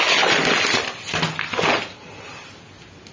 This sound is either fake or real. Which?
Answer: real